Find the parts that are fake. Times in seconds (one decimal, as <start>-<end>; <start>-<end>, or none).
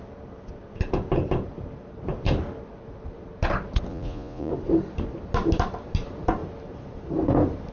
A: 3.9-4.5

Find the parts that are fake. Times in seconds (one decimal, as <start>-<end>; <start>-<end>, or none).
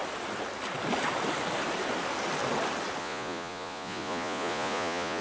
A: 3.0-5.2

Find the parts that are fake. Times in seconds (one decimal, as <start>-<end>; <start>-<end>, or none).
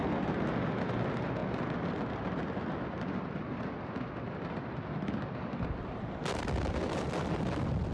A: none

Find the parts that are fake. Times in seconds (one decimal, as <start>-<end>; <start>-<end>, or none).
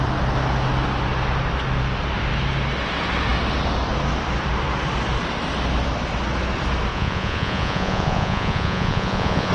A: 6.9-9.5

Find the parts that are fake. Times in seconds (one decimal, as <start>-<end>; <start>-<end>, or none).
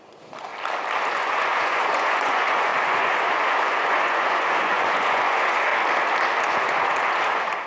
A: 0.0-0.5; 1.1-5.7; 6.5-7.7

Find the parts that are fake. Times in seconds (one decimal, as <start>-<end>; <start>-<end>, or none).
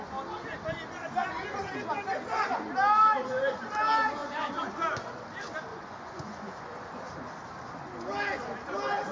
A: 4.2-4.7; 5.7-7.0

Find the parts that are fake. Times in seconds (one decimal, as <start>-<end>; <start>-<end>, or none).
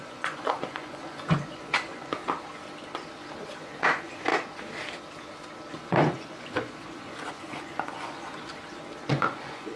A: 0.0-2.2; 3.6-4.3; 5.7-8.5; 9.1-9.8